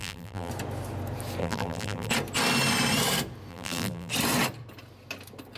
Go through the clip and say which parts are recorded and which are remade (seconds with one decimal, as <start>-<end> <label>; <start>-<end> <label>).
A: 0.0-0.5 remade; 0.5-1.4 recorded; 1.4-2.1 remade; 2.1-3.5 recorded; 3.5-4.1 remade; 4.1-5.6 recorded